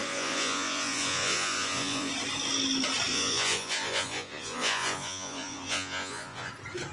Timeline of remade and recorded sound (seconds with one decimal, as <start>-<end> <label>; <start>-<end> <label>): 0.0-2.1 remade; 2.1-3.1 recorded; 3.1-6.5 remade; 6.5-6.9 recorded